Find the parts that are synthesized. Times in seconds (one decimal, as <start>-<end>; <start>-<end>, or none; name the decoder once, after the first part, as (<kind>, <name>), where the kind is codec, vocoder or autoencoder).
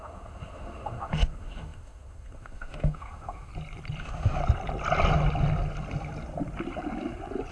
0.0-3.5 (autoencoder, DAC-VAE); 4.0-4.4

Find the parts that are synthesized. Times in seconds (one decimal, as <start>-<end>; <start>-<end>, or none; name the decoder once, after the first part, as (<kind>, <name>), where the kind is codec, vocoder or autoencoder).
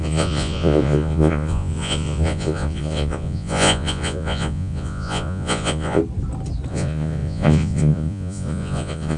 0.0-6.0 (vocoder, Vocos); 6.7-9.2